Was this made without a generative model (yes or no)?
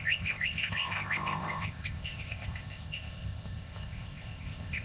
no